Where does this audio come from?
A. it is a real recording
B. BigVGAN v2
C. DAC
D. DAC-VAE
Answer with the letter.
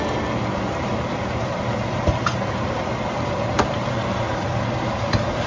B